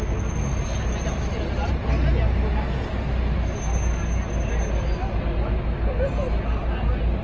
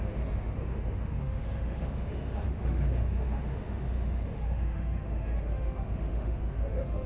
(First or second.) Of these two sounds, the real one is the first